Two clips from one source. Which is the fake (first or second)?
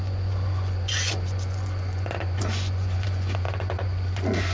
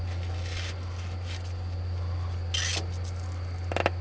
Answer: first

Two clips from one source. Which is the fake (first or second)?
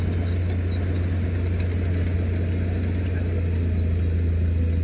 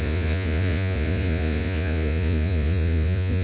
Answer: second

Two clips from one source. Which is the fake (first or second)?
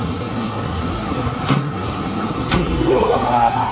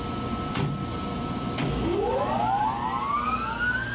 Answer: first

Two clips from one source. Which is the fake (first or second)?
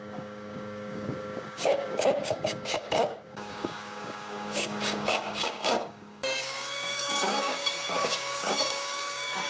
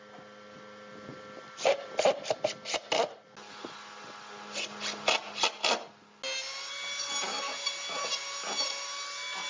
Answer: first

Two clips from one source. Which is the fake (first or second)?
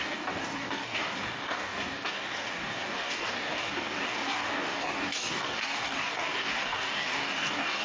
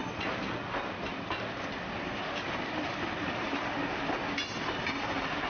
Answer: first